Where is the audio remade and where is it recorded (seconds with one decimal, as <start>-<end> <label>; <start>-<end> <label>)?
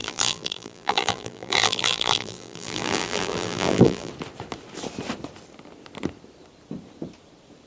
0.0-4.1 remade; 4.1-7.7 recorded